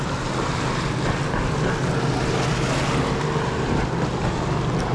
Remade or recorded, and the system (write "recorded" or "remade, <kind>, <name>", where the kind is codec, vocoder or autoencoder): recorded